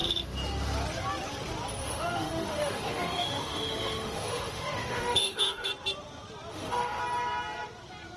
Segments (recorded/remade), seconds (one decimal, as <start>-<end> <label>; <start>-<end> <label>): 0.0-1.8 recorded; 1.8-5.7 remade; 5.7-6.5 recorded; 6.5-7.0 remade; 7.0-8.2 recorded